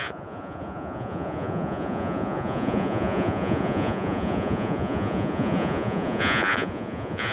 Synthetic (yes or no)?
yes